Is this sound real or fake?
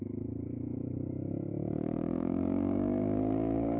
fake